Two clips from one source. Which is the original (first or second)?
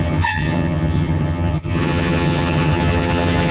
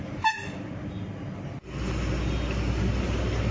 second